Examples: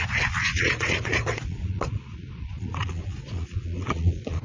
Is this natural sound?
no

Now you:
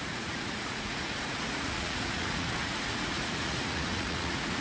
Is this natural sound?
no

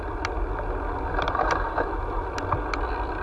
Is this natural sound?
yes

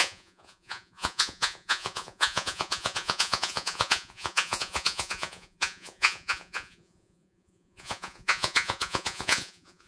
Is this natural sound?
no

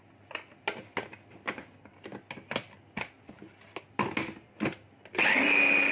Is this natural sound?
yes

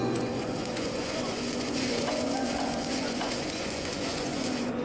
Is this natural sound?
no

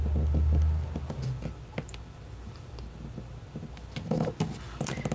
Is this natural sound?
yes